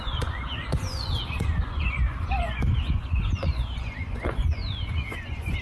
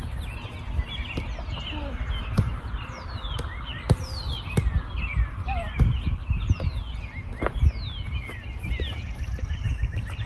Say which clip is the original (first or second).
second